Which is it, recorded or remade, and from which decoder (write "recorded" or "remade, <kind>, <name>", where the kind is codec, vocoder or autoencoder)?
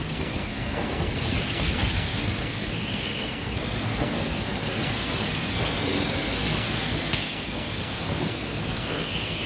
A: remade, codec, SNAC